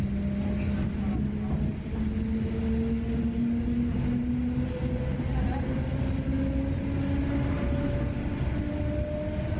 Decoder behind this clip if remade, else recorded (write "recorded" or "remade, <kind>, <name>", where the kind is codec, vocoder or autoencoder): recorded